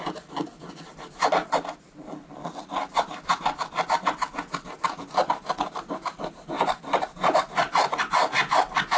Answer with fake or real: real